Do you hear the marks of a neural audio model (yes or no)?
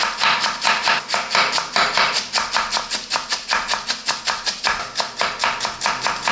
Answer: no